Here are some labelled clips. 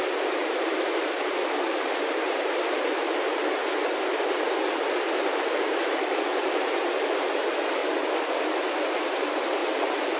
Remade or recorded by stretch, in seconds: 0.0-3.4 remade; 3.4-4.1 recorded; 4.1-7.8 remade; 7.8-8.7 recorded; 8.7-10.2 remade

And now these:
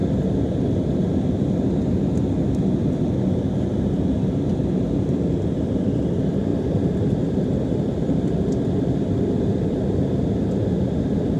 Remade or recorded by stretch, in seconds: 0.0-6.5 recorded; 6.5-10.1 remade; 10.1-11.4 recorded

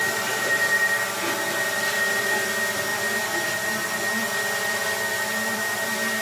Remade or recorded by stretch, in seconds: 0.0-2.9 remade; 2.9-4.8 recorded; 4.8-6.2 remade

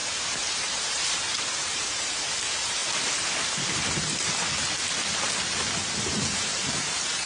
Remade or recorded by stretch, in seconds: 0.0-2.8 remade; 2.8-6.0 recorded; 6.0-7.3 remade